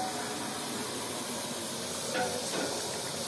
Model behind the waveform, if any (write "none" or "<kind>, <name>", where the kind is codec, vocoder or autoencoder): none